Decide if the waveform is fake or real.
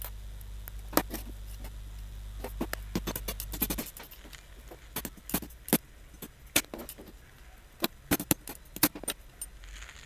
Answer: real